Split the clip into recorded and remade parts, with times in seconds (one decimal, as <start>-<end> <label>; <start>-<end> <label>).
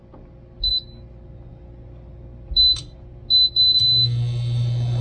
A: 0.0-5.0 recorded